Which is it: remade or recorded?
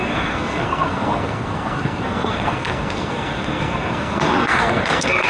remade